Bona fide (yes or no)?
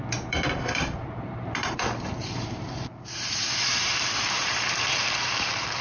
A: no